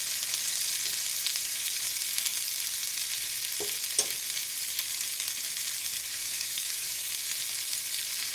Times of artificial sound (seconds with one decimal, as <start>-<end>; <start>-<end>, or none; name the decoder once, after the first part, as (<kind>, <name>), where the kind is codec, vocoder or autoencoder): 1.3-1.9 (autoencoder, DAC-VAE); 5.8-7.1